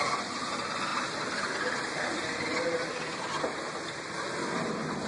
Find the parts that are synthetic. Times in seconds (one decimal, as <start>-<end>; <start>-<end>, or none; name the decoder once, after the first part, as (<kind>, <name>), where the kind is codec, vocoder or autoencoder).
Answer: none